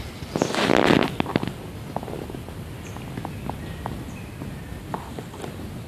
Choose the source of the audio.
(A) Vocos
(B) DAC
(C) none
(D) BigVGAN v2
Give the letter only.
C